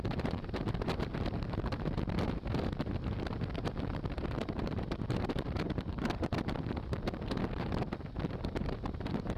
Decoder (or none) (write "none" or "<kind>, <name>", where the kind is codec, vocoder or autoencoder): vocoder, BigVGAN v2